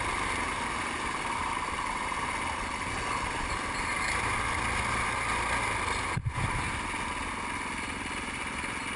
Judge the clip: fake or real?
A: real